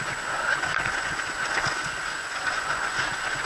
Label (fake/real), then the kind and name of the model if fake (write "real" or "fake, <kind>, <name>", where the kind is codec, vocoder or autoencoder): fake, vocoder, Vocos